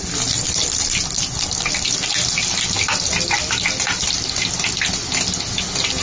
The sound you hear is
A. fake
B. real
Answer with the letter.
B